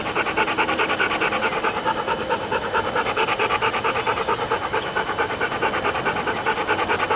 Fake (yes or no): yes